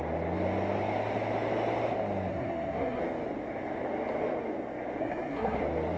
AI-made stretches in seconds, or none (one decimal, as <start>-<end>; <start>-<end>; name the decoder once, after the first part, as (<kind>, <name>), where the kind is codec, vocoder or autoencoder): 2.3-3.0 (codec, SNAC); 5.0-5.6